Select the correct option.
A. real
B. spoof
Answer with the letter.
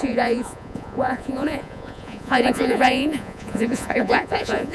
B